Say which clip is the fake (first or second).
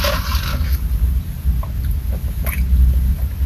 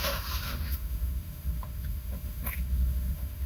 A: second